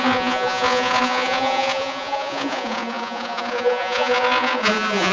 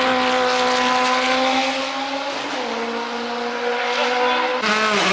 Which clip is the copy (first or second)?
first